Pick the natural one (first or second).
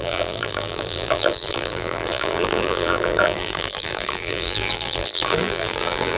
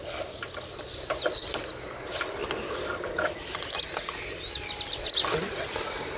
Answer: second